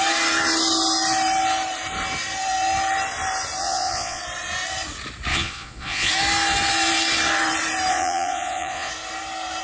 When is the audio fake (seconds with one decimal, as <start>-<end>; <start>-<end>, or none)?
3.6-4.2; 5.3-6.1; 7.9-8.9